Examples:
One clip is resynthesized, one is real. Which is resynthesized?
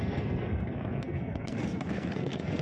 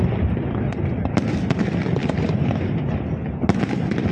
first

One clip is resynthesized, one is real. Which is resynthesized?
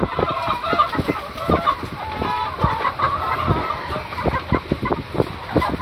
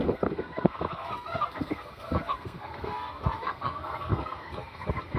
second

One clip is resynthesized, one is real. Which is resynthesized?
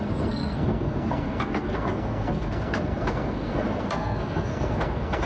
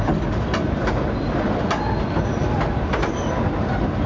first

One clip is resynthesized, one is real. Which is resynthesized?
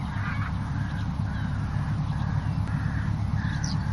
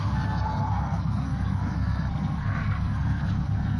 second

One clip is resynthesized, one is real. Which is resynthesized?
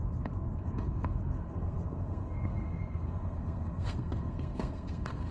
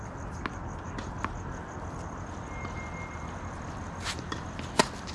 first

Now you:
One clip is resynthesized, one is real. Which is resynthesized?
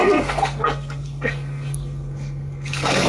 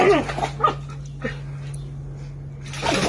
first